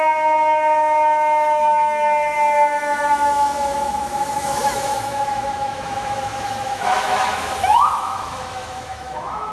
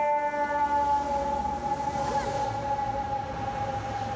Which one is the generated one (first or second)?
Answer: first